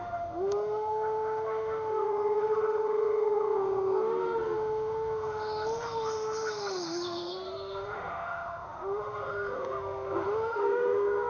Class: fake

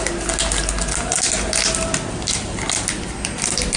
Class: real